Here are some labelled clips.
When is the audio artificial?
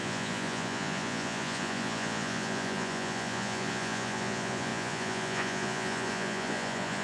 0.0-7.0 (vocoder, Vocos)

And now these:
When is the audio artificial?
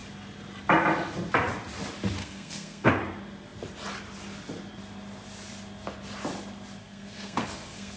2.2-2.9 (codec, SNAC); 6.8-8.0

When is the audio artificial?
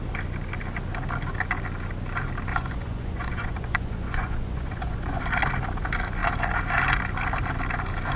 2.5-5.2 (vocoder, Vocos)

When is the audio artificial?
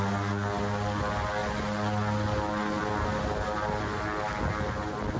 none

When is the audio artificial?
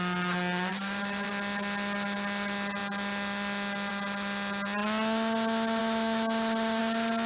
0.7-1.3 (vocoder, BigVGAN v2)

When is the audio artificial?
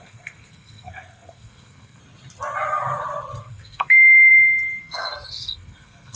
0.0-2.0 (codec, SNAC); 3.4-4.3; 4.8-6.2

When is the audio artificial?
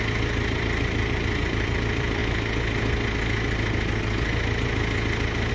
0.0-2.2 (vocoder, BigVGAN v2)